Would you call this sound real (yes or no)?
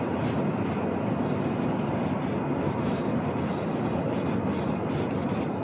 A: yes